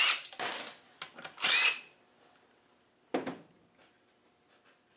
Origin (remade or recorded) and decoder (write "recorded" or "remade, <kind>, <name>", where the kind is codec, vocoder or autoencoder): recorded